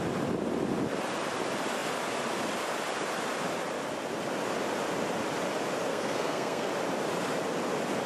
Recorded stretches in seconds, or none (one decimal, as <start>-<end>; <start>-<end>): 0.0-5.9; 6.7-8.1

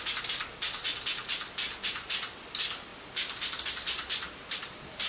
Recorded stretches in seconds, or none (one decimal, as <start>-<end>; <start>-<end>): 0.0-5.1